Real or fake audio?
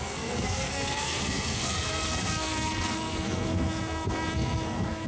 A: fake